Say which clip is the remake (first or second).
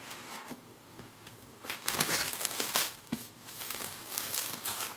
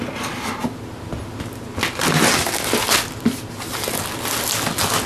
first